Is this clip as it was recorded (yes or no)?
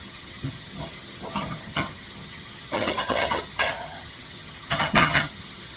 no